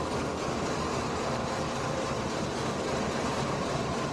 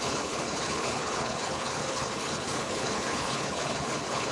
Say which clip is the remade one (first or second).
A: second